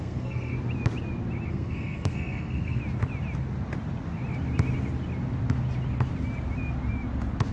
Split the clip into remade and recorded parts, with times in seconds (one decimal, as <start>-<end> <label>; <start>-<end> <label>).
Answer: 0.0-0.5 remade; 0.5-1.5 recorded; 1.5-2.8 remade; 2.8-7.5 recorded